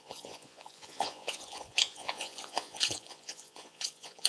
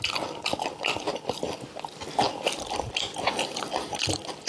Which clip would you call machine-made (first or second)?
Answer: first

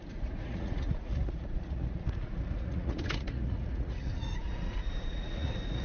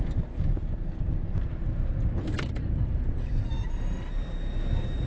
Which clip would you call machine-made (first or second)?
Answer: first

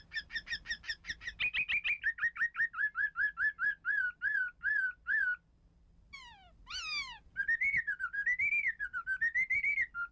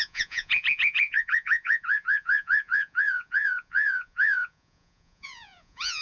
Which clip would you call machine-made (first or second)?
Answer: second